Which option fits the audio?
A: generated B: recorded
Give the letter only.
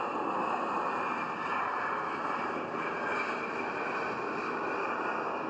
B